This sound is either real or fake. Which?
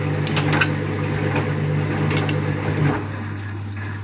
real